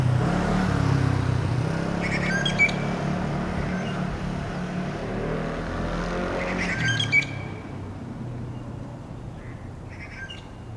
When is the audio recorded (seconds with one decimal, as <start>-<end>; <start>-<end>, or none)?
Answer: 0.0-10.8